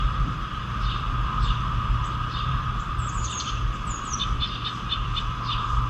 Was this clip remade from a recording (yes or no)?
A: yes